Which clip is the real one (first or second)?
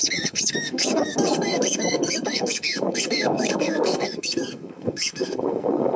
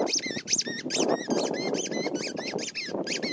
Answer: second